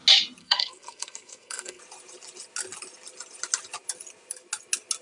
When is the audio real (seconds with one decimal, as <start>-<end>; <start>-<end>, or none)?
0.0-0.4; 1.8-5.0